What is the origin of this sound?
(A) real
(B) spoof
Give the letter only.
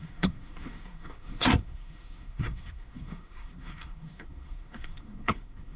B